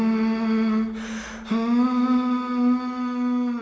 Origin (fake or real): real